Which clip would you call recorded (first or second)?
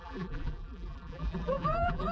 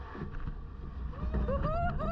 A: second